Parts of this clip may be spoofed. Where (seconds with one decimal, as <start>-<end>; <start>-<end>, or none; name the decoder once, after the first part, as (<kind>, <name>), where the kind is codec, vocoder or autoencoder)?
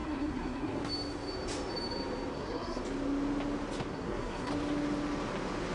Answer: 0.0-0.8 (codec, SNAC); 2.3-2.8; 3.9-4.5